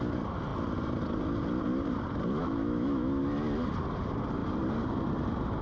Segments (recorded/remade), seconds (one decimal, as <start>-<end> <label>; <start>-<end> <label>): 0.0-2.4 recorded; 2.4-3.2 remade; 3.2-5.6 recorded